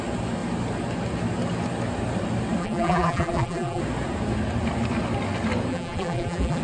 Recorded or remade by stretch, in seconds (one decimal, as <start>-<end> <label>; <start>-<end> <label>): 0.0-2.6 recorded; 2.6-3.8 remade; 3.8-5.7 recorded; 5.7-6.6 remade